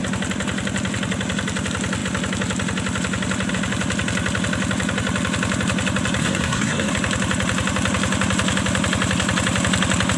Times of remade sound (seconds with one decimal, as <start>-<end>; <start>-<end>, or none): 6.2-6.9